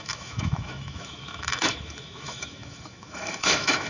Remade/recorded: remade